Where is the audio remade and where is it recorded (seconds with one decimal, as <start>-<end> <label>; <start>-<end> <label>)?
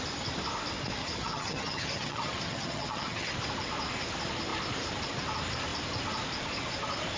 0.0-1.0 recorded; 1.0-3.3 remade; 3.3-7.2 recorded